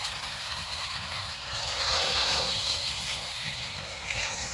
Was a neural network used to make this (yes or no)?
yes